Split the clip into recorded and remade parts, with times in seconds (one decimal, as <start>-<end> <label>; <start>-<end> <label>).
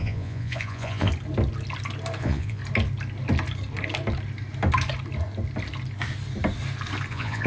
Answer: 0.0-1.1 remade; 1.1-2.2 recorded; 2.2-2.6 remade; 2.6-7.1 recorded; 7.1-7.5 remade